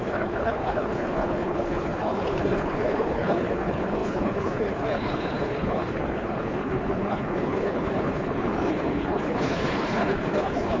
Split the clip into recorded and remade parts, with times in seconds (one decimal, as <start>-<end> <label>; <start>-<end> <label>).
0.0-10.8 remade